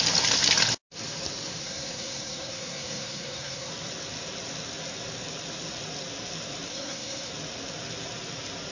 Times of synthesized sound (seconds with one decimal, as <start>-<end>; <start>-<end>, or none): 1.6-3.7; 6.7-7.3